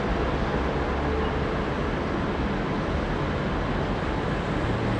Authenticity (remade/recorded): recorded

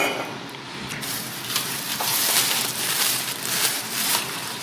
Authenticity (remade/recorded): remade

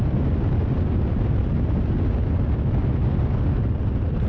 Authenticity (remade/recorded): recorded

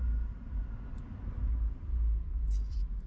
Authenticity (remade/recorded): recorded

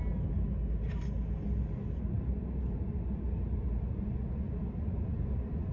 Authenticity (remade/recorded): recorded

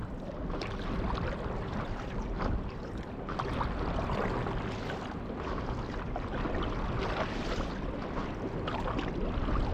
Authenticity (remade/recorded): recorded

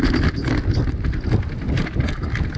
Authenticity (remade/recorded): recorded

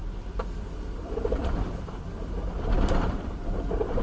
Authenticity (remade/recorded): remade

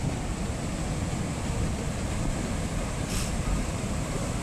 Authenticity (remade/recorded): recorded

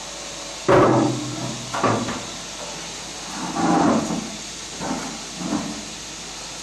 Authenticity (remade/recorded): recorded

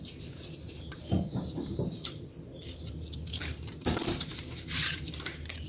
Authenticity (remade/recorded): remade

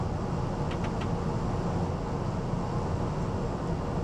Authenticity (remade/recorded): recorded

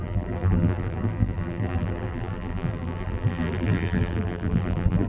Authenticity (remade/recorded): remade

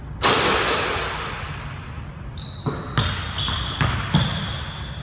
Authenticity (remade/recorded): recorded